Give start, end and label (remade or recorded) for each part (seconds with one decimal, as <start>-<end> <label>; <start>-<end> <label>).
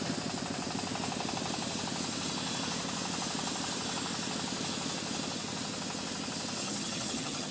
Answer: 0.0-6.6 recorded; 6.6-7.5 remade